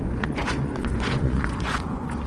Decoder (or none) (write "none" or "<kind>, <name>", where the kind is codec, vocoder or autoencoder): vocoder, Vocos